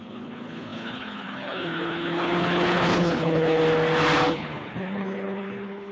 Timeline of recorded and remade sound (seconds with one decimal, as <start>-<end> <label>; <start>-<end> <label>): 0.0-3.6 remade; 3.6-4.3 recorded; 4.3-5.9 remade